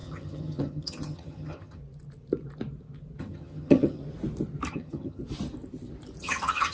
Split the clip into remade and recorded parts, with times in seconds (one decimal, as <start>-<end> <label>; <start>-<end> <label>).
0.0-1.8 remade; 1.8-3.2 recorded; 3.2-4.0 remade; 4.0-4.7 recorded; 4.7-5.2 remade; 5.2-6.2 recorded; 6.2-6.7 remade